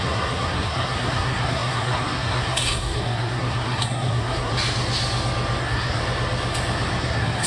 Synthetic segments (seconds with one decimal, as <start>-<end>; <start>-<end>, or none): 0.0-4.5; 5.6-6.0; 7.0-7.5